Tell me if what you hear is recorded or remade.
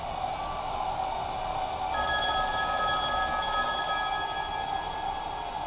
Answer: recorded